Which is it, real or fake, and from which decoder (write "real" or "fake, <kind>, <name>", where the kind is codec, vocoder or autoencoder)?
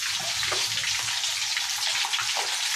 real